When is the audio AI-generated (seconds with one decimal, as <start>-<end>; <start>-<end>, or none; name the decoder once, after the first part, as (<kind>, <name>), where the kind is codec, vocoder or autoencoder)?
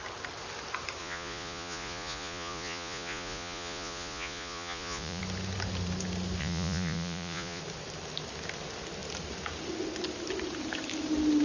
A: 1.0-5.2 (vocoder, Vocos); 6.4-7.6